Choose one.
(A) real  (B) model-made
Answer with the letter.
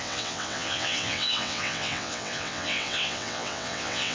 B